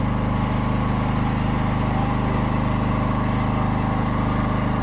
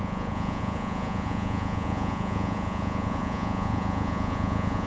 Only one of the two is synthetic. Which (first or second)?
second